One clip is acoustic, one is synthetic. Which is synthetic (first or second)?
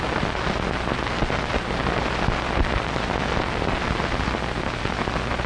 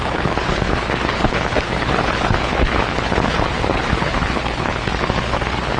second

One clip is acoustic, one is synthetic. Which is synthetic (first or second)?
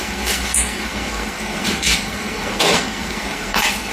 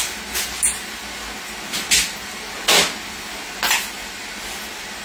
first